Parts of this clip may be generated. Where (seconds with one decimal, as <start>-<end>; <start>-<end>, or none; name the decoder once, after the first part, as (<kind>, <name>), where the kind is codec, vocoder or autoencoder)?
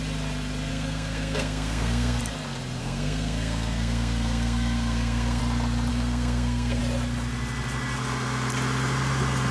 0.7-2.2 (codec, SNAC); 2.8-5.4; 5.9-6.8